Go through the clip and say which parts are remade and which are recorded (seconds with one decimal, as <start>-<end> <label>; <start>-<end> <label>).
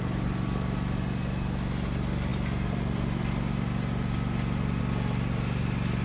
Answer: 0.0-6.0 recorded